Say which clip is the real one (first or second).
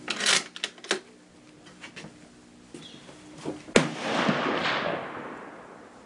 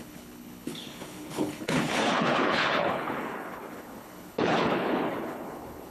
first